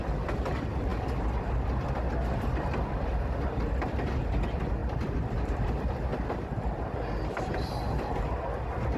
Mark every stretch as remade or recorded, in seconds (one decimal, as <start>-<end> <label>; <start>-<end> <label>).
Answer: 0.0-9.0 recorded